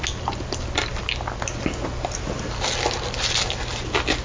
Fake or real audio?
real